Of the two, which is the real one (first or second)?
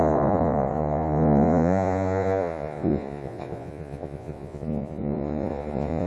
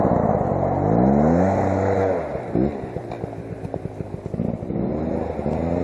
second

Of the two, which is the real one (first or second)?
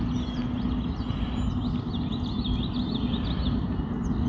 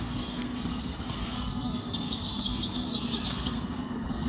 first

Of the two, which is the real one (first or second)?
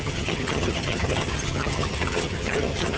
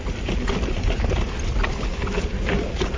second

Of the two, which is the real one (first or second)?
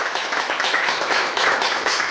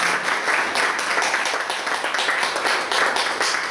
second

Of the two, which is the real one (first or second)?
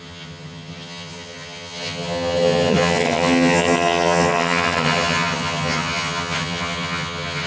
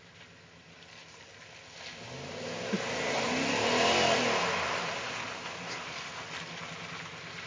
second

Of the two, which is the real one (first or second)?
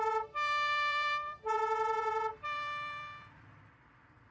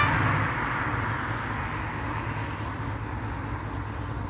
second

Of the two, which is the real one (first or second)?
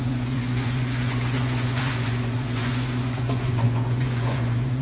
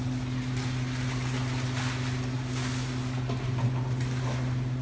second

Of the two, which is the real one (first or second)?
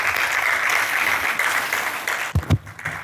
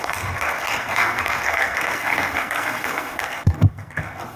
first